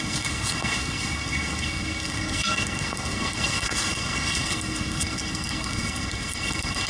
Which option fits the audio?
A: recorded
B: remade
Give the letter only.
B